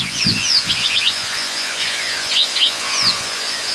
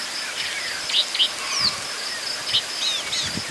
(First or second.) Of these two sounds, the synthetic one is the first